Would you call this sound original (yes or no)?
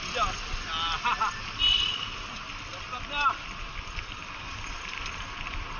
yes